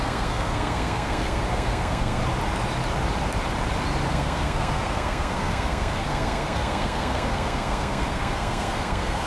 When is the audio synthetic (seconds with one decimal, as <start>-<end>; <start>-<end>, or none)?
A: 0.0-2.2; 4.1-9.3